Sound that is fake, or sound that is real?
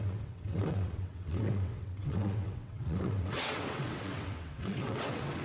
fake